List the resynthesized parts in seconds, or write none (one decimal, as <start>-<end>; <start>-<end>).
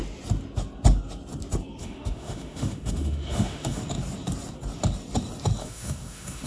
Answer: 1.8-3.8; 5.6-6.5